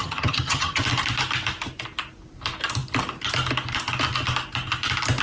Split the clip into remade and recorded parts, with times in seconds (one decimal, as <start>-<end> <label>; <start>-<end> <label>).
0.0-0.8 remade; 0.8-5.2 recorded